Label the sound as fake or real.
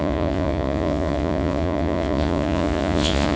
fake